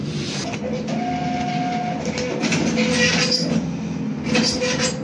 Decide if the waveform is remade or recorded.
recorded